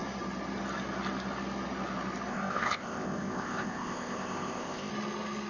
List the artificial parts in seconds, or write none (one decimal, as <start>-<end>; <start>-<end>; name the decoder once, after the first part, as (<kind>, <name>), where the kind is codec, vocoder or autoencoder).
2.3-4.9 (codec, ZipCodec)